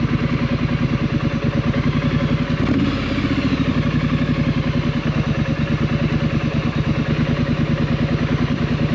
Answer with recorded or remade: recorded